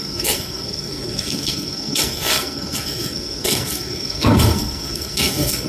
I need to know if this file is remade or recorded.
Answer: remade